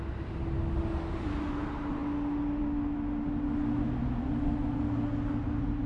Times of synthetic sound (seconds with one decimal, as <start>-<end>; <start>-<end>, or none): none